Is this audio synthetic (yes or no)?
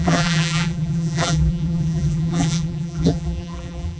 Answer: yes